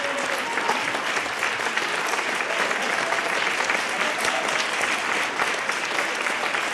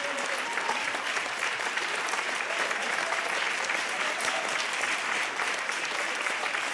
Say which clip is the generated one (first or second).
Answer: second